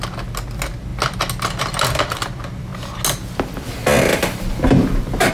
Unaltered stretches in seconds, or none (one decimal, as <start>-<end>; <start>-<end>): 0.0-5.3